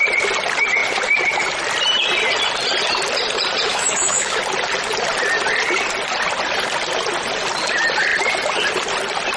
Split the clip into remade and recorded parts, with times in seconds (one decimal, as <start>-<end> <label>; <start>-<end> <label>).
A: 0.0-3.7 recorded; 3.7-4.4 remade; 4.4-9.4 recorded